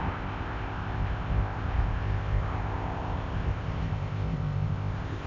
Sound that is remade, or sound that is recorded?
remade